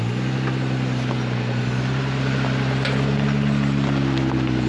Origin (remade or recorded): recorded